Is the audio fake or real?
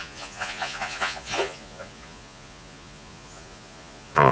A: fake